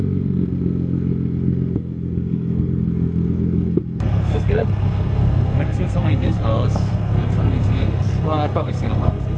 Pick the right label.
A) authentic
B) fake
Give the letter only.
B